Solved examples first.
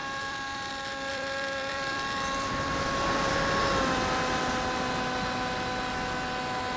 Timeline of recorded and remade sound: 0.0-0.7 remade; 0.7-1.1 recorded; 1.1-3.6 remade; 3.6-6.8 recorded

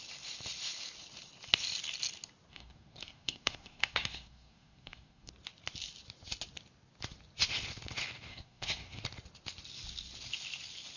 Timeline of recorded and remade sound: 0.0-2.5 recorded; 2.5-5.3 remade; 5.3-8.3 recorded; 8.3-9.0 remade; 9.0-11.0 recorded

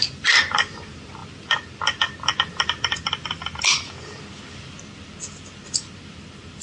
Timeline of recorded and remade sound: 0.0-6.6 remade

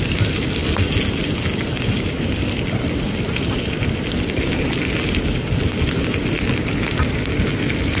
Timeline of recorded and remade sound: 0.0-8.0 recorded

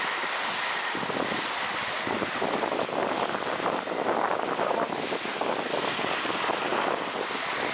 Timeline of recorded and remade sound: 0.0-7.7 recorded

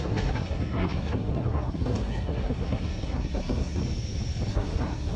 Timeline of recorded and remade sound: 0.0-3.8 remade; 3.8-4.5 recorded; 4.5-5.2 remade

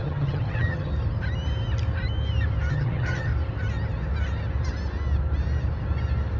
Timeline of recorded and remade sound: 0.0-0.9 remade; 0.9-2.7 recorded; 2.7-3.3 remade; 3.3-6.4 recorded

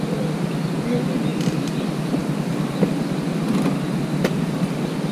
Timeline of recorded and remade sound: 0.0-5.1 recorded